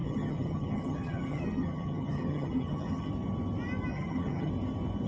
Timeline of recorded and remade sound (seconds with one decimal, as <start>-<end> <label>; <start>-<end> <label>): 0.0-3.1 remade; 3.1-3.9 recorded; 3.9-4.5 remade; 4.5-5.1 recorded